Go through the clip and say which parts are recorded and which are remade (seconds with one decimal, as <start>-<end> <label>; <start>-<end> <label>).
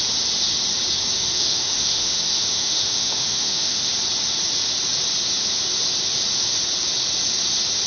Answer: 0.0-1.2 recorded; 1.2-3.9 remade; 3.9-7.9 recorded